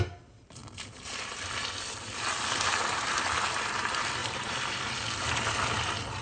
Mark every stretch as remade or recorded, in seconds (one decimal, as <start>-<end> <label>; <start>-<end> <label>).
0.0-0.6 recorded; 0.6-1.1 remade; 1.1-4.2 recorded; 4.2-4.8 remade; 4.8-6.2 recorded